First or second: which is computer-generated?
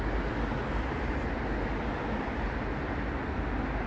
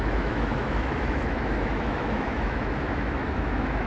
second